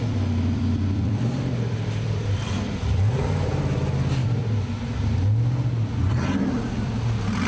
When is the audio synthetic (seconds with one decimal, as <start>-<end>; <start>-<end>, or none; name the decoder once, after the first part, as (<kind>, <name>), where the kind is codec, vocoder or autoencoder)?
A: 0.0-4.4 (vocoder, BigVGAN v2); 6.1-7.5